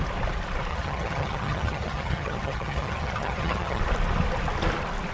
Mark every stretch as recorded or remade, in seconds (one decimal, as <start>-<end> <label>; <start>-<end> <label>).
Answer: 0.0-0.7 recorded; 0.7-3.8 remade; 3.8-5.1 recorded